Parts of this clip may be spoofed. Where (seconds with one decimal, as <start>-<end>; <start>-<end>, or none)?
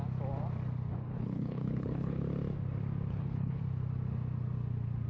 1.0-2.2; 3.1-3.6